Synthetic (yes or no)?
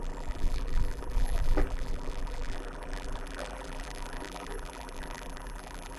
yes